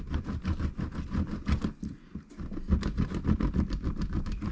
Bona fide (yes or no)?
yes